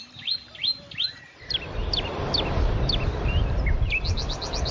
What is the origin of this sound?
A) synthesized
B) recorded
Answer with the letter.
B